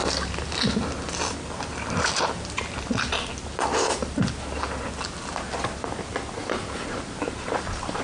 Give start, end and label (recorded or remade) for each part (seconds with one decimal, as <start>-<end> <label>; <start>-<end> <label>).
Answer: 0.0-8.0 recorded